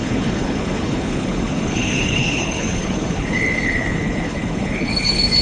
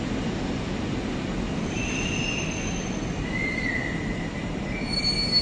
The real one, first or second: second